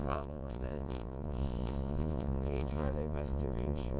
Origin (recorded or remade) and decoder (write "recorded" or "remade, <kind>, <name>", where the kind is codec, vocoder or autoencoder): remade, vocoder, Vocos